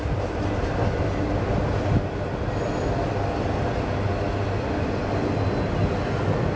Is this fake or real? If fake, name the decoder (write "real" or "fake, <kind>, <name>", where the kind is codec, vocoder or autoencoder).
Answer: real